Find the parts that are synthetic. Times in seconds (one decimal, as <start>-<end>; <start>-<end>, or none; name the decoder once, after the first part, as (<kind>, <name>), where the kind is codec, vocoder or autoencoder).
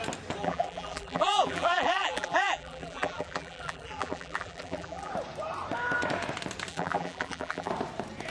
0.4-5.1 (vocoder, BigVGAN v2); 6.7-7.7